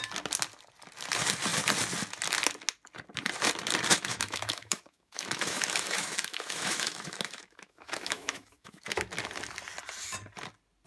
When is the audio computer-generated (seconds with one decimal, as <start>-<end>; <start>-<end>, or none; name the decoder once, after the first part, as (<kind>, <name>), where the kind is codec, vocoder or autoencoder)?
3.9-9.1 (autoencoder, DAC-VAE)